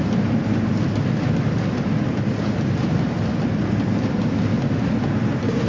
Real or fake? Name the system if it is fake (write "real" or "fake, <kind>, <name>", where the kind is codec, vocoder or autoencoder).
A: real